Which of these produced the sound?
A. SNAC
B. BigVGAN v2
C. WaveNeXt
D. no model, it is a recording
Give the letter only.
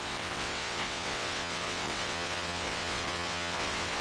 C